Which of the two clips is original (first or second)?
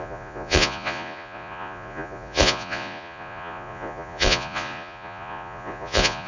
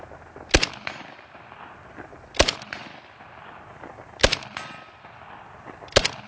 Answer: second